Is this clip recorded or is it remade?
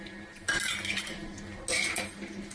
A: recorded